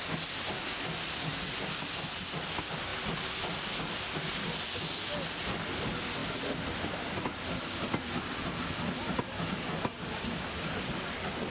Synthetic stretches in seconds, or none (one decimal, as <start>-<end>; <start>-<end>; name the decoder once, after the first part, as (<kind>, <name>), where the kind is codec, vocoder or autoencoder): none

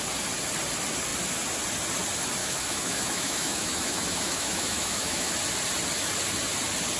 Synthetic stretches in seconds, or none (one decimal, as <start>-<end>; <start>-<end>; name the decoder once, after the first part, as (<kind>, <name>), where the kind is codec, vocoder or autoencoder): 2.4-5.3 (autoencoder, DAC-VAE)

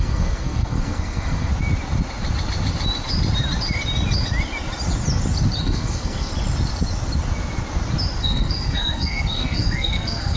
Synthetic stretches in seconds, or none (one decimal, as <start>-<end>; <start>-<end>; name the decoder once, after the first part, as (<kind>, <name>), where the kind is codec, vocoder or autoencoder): 0.0-1.5 (codec, SNAC); 5.6-6.3; 8.2-10.4

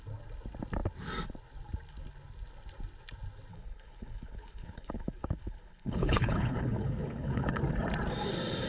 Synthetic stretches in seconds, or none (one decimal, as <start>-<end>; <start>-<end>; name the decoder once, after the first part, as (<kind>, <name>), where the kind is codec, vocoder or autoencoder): 3.5-7.6 (codec, HILCodec)

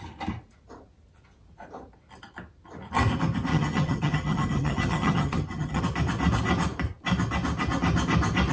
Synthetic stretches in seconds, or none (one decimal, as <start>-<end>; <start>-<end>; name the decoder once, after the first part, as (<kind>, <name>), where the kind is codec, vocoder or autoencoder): 3.5-5.8 (vocoder, HiFi-GAN)

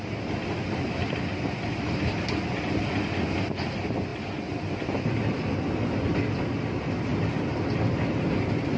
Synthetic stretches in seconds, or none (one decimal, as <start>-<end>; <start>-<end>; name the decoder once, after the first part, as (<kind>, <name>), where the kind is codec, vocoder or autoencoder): 7.1-8.0 (vocoder, BigVGAN v2)

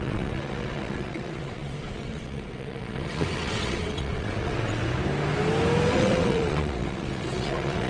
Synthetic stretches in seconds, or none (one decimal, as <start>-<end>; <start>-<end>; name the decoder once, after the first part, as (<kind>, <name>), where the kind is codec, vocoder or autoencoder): 0.0-4.8 (vocoder, WaveNeXt); 5.9-7.9

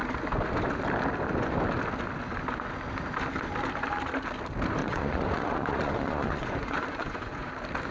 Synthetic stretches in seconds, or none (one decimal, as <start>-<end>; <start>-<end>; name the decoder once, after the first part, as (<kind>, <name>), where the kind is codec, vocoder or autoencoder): 4.8-7.5 (vocoder, Vocos)